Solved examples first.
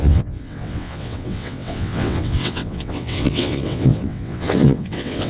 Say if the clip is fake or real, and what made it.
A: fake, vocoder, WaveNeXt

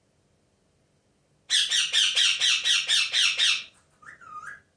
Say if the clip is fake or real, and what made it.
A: real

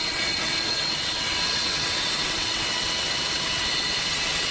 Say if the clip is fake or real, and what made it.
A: fake, vocoder, WaveNeXt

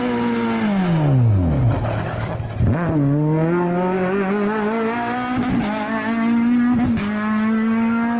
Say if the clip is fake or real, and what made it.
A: real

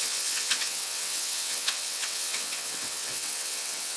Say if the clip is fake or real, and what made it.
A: fake, vocoder, WaveNeXt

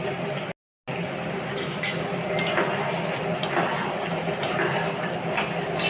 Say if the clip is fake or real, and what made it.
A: real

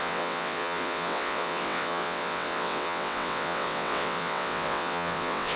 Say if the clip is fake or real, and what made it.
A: fake, vocoder, WaveNeXt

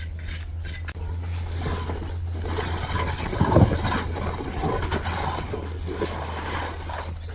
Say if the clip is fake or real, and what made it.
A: real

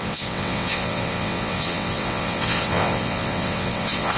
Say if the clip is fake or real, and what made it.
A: fake, vocoder, WaveNeXt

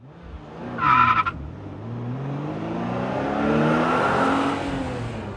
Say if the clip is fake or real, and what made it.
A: real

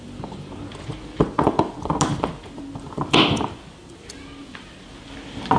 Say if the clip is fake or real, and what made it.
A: real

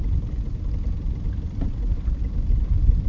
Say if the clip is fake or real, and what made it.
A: real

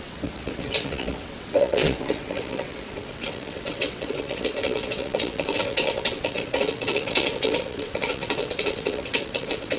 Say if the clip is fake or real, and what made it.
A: fake, vocoder, WaveNeXt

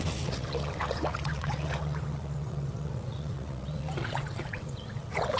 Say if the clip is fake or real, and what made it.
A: fake, vocoder, WaveNeXt